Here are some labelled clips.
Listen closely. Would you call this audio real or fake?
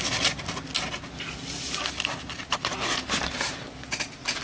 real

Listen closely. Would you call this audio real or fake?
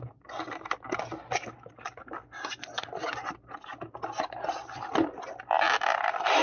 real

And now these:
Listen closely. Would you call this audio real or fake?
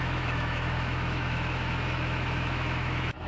fake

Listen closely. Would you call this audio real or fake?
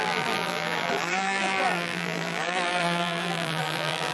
fake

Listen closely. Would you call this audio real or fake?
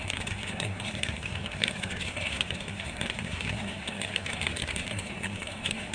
fake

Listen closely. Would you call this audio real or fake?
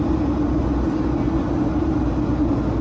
real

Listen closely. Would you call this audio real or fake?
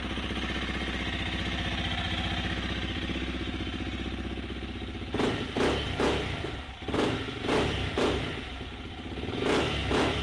real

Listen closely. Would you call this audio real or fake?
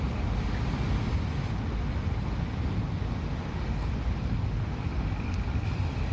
real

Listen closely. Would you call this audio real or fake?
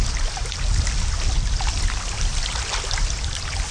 real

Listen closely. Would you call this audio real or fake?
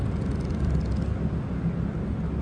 real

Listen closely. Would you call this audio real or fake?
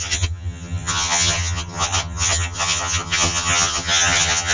fake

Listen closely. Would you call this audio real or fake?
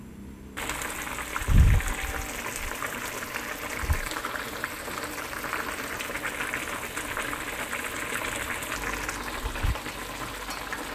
real